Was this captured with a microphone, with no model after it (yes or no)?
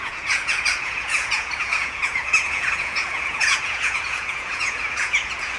no